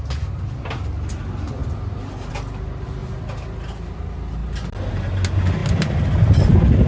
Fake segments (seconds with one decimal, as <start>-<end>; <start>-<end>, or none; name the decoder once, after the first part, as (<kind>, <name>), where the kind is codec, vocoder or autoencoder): none